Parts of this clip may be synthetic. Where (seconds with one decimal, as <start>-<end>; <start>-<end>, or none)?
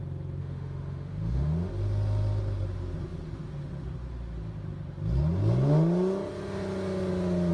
0.4-1.7